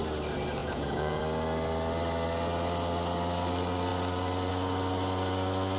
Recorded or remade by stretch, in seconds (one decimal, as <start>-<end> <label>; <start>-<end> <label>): 0.0-0.6 recorded; 0.6-1.2 remade; 1.2-5.8 recorded